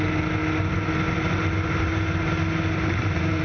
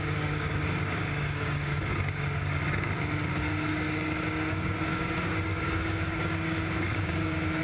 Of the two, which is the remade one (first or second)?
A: second